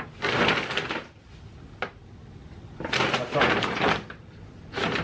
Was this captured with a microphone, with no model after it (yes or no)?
yes